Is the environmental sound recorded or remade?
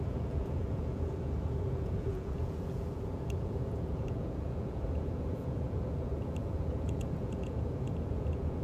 remade